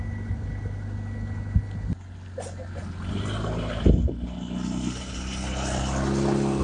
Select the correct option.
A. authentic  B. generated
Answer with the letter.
A